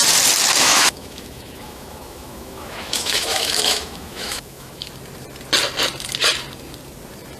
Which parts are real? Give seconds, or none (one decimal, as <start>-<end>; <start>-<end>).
0.0-0.7; 4.9-7.4